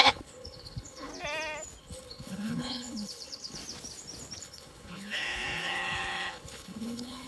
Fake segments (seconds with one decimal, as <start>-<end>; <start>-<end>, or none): 0.0-1.1; 1.8-3.6; 4.4-7.3